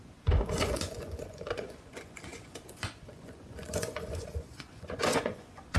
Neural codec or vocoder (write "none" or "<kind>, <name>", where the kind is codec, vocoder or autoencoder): vocoder, Vocos